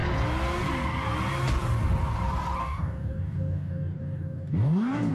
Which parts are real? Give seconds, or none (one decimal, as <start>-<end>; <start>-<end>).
0.0-2.6